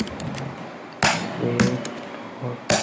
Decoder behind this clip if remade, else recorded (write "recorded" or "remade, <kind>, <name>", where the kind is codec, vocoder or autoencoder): recorded